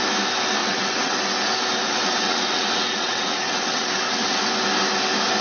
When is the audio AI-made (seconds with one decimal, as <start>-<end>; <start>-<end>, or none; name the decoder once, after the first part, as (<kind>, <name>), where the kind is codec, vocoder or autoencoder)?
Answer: 0.6-1.2 (vocoder, WaveNeXt); 1.8-4.4